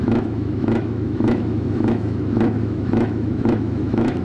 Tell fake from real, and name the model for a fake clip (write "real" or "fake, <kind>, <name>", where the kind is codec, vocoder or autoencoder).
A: fake, autoencoder, DAC-VAE